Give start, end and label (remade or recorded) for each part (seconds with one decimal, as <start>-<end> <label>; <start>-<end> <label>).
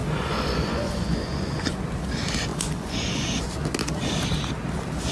0.0-1.8 remade; 1.8-2.5 recorded; 2.5-3.5 remade; 3.5-5.1 recorded